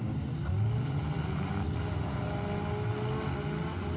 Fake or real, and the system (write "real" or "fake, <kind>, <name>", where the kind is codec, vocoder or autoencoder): real